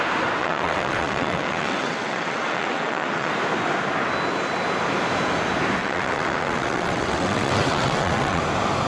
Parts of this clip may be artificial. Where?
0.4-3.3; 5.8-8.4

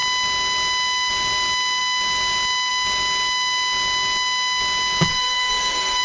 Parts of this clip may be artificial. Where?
5.1-6.0